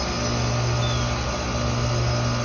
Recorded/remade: recorded